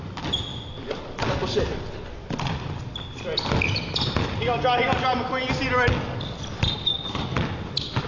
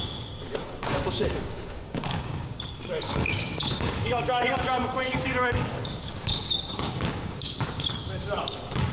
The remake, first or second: second